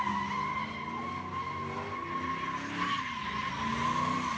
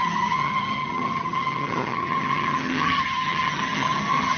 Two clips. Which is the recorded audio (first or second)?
first